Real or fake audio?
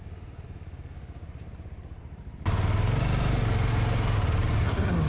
real